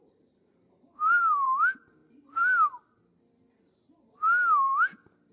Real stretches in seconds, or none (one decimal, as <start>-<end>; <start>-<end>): 2.0-5.3